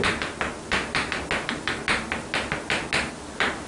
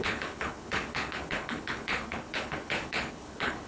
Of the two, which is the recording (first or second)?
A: first